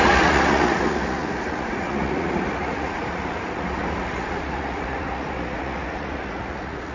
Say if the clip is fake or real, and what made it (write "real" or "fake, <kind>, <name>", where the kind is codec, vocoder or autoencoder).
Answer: fake, vocoder, Vocos